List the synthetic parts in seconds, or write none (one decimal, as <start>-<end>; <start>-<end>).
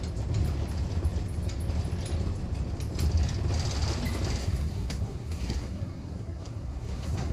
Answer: 4.4-7.3